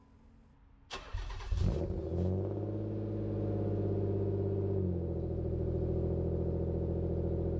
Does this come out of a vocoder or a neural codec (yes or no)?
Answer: no